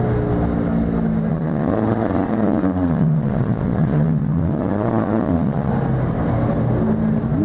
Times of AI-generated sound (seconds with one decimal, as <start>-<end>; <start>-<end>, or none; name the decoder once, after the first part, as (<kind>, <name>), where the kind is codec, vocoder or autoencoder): 1.3-5.7 (vocoder, Vocos)